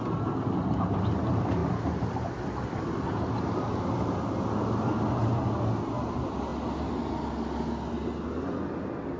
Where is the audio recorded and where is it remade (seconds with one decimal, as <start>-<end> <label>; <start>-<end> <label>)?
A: 0.0-1.6 recorded; 1.6-2.8 remade; 2.8-9.2 recorded